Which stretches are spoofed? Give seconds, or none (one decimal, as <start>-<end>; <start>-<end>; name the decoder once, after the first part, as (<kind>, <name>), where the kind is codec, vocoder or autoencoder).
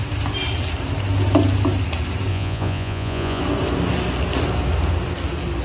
2.3-3.4 (vocoder, Vocos)